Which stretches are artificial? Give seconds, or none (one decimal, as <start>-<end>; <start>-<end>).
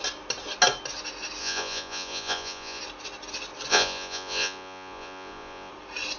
1.4-2.8; 3.7-5.7